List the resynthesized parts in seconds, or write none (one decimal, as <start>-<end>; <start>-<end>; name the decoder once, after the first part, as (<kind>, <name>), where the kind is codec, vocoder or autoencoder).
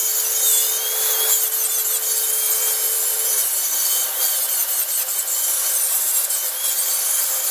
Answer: 3.1-7.5 (vocoder, BigVGAN v2)